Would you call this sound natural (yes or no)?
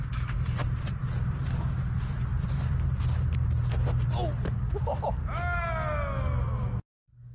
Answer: yes